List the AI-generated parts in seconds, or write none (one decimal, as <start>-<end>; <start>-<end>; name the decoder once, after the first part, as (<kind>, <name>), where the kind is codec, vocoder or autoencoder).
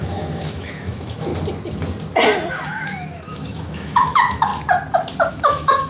0.0-1.3 (autoencoder, DAC-VAE); 2.5-4.5; 5.3-5.9